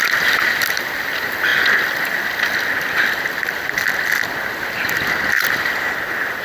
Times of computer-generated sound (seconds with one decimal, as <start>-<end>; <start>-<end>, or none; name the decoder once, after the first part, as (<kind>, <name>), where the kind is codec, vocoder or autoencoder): none